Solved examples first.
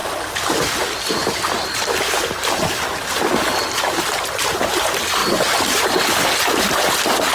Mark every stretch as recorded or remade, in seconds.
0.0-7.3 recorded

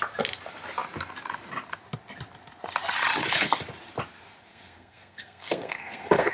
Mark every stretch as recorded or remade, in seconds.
0.0-4.5 recorded; 4.5-6.3 remade

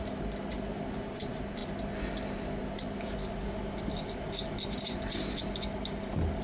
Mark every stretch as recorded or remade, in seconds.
0.0-6.4 recorded